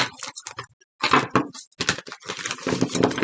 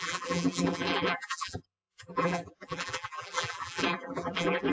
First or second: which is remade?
second